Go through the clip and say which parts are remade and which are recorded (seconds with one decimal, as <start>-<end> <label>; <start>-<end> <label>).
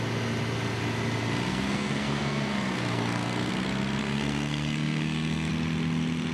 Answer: 0.0-1.5 recorded; 1.5-3.5 remade; 3.5-4.0 recorded; 4.0-5.5 remade; 5.5-6.3 recorded